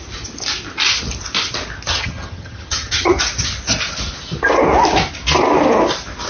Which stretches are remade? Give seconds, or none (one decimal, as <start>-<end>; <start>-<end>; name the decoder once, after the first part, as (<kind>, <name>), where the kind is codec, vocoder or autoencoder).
1.9-3.2 (vocoder, HiFi-GAN)

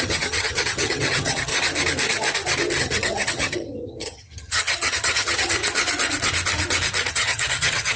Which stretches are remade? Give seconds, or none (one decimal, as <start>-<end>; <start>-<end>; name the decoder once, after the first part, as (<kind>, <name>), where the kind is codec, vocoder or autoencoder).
0.0-1.5 (vocoder, HiFi-GAN); 2.8-5.6; 7.1-8.0

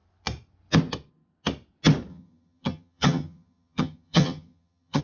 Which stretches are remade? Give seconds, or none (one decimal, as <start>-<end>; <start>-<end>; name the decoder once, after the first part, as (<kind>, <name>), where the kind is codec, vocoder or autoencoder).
2.1-5.0 (vocoder, HiFi-GAN)

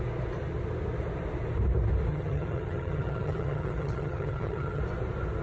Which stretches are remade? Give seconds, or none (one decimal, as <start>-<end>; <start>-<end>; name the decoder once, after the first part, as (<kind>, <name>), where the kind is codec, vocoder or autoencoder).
2.1-4.8 (vocoder, HiFi-GAN)